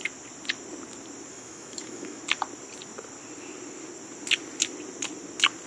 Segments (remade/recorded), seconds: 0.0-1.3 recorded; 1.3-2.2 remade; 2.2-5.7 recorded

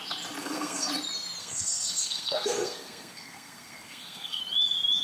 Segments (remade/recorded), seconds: 0.0-0.4 recorded; 0.4-0.9 remade; 0.9-1.4 recorded; 1.4-4.4 remade; 4.4-5.0 recorded

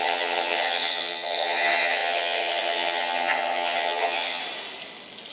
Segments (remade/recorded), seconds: 0.0-4.4 remade; 4.4-5.3 recorded

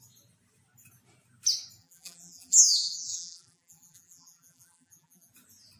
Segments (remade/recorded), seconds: 0.0-1.8 recorded; 1.8-5.3 remade; 5.3-5.8 recorded

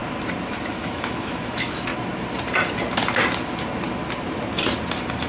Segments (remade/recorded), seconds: 0.0-0.7 recorded; 0.7-1.9 remade; 1.9-5.3 recorded